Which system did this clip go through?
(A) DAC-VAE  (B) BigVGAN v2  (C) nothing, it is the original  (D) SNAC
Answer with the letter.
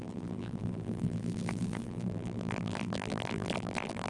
B